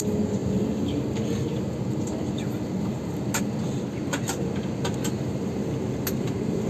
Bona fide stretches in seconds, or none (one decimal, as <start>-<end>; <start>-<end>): 0.0-6.7